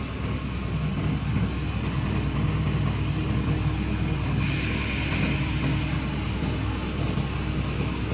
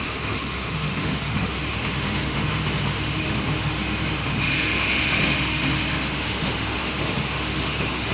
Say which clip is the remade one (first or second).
second